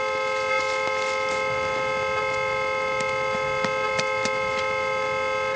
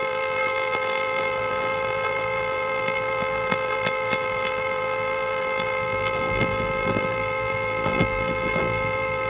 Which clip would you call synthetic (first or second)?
second